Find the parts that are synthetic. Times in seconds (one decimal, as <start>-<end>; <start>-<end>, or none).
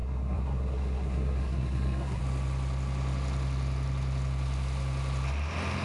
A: 0.0-2.2